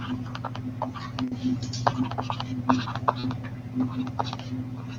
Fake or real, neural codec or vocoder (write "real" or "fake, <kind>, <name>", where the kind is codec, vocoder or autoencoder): real